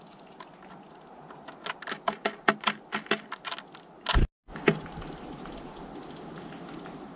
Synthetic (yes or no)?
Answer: no